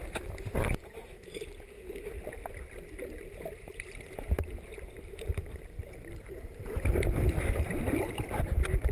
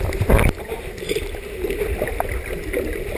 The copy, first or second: first